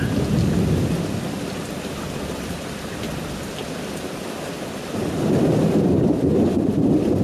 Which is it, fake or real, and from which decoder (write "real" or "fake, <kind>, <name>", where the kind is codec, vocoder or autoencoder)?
fake, vocoder, BigVGAN v2